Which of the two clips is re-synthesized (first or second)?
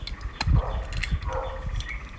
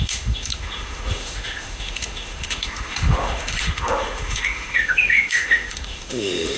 second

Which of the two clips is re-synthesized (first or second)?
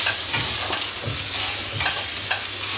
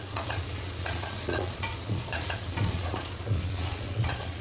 second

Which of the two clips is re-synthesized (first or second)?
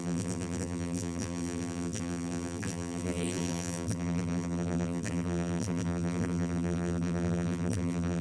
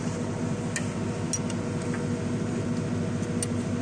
first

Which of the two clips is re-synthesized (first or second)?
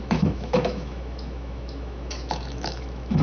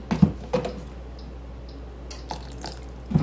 first